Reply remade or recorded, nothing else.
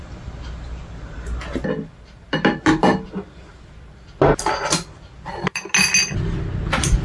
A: recorded